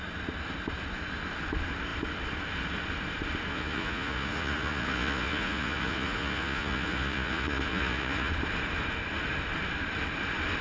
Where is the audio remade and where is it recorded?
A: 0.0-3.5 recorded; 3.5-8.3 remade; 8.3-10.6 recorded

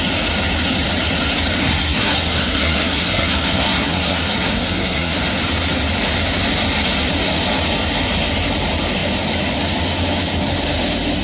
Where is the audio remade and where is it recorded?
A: 0.0-1.6 recorded; 1.6-5.2 remade; 5.2-11.2 recorded

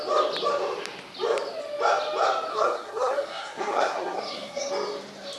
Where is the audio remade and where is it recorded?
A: 0.0-2.5 recorded; 2.5-4.7 remade; 4.7-5.4 recorded